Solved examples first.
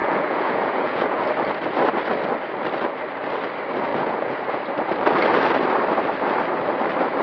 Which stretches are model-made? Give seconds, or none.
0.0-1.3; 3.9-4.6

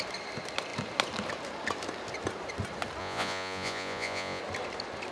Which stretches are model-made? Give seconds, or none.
3.0-4.4

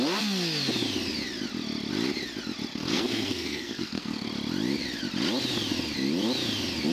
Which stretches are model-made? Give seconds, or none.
2.7-4.3

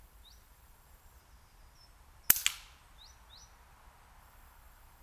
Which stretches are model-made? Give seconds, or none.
0.0-1.2; 4.2-5.0

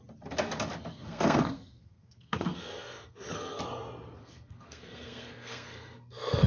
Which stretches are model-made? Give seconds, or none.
0.9-3.6; 4.2-6.5